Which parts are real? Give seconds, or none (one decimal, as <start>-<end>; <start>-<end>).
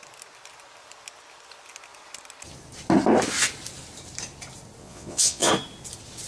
0.0-4.8; 5.5-6.3